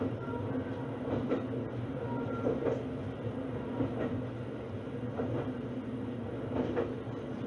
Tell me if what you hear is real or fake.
real